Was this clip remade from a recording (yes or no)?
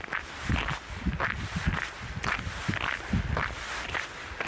no